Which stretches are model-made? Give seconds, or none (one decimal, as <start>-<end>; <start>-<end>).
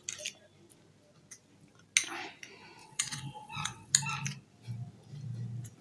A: 2.8-3.9